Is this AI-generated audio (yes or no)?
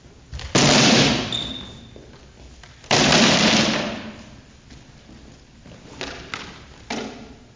no